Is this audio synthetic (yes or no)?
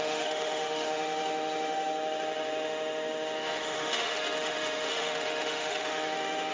yes